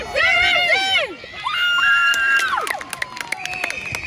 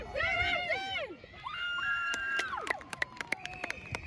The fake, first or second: second